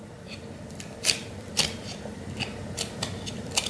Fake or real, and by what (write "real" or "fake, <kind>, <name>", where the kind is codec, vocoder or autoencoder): real